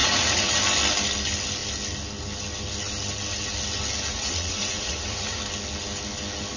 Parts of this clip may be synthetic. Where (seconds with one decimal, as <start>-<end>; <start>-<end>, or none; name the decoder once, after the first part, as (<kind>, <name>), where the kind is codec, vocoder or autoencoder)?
0.0-0.6 (vocoder, Vocos); 4.1-5.4

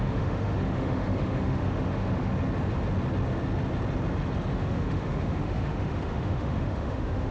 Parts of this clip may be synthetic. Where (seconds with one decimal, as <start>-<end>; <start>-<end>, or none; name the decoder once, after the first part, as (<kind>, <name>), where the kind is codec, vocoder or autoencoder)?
0.0-2.3 (autoencoder, DAC-VAE); 4.5-7.3

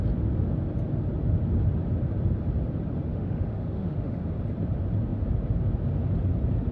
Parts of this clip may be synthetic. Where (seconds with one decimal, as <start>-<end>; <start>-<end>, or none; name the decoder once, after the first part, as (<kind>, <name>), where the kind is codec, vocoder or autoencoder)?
3.1-4.2 (autoencoder, DAC-VAE)

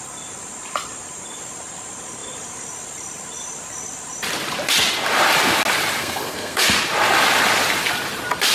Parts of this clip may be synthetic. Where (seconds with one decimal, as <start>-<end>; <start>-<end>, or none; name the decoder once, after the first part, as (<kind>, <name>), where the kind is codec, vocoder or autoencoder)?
6.0-6.6 (codec, SNAC)

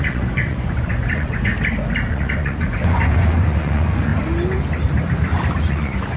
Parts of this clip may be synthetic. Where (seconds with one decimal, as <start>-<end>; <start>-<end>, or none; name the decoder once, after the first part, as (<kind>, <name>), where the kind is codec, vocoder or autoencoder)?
0.0-1.5 (vocoder, Vocos); 2.1-4.1; 5.7-6.2